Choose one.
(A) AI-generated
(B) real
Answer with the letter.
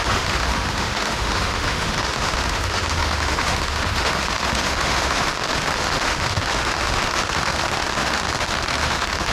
A